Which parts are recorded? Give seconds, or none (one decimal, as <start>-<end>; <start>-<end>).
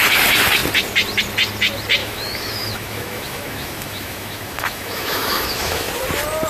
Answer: 0.0-2.0; 5.9-6.5